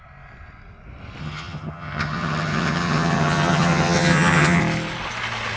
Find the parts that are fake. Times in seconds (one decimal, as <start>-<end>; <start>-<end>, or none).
1.2-4.6